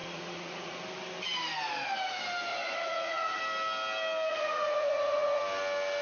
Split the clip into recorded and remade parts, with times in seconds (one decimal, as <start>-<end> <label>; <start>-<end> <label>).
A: 0.0-0.8 remade; 0.8-2.5 recorded; 2.5-3.4 remade; 3.4-4.3 recorded; 4.3-5.4 remade; 5.4-6.0 recorded